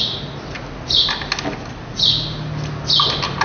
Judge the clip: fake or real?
real